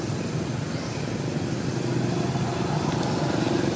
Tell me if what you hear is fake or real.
real